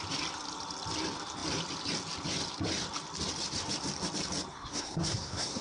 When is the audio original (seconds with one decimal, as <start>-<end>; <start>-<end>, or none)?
0.0-4.5